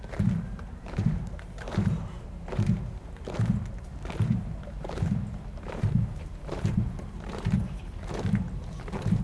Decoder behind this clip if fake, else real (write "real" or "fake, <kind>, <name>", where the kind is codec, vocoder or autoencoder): fake, vocoder, BigVGAN v2